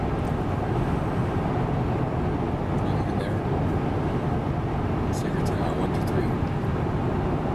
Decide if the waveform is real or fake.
real